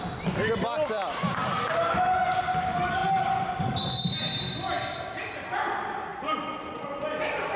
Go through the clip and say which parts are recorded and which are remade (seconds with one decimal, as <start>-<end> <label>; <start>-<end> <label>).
0.0-7.6 recorded